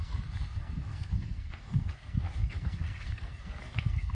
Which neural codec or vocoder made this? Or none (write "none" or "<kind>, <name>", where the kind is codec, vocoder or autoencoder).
codec, SNAC